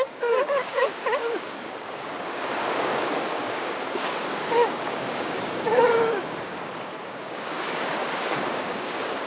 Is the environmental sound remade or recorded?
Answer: remade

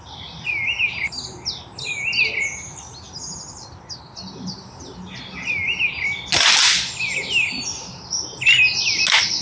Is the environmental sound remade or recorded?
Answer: recorded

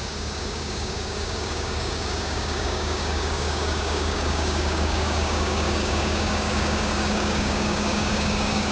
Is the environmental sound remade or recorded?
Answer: remade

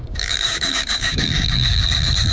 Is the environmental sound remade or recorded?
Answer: remade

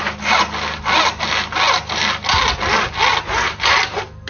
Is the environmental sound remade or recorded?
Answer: recorded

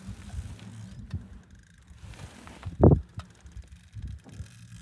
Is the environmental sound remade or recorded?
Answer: recorded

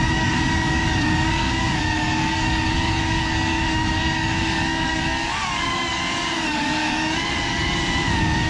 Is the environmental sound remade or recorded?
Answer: remade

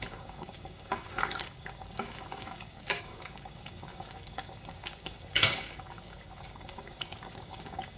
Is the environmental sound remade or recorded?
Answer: remade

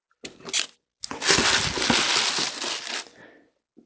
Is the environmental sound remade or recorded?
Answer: recorded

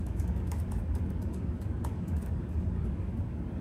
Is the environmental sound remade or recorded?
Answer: remade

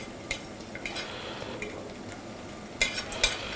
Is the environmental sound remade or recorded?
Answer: recorded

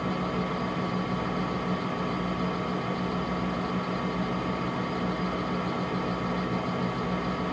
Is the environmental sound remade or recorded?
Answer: recorded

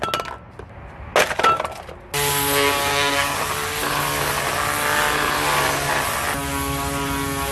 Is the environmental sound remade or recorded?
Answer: recorded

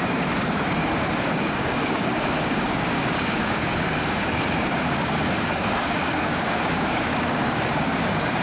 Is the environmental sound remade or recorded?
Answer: remade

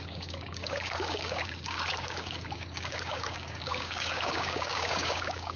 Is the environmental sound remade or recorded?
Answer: remade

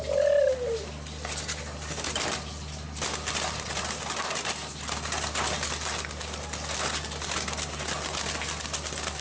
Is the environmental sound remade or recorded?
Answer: recorded